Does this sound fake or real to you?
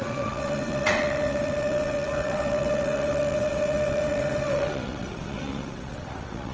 fake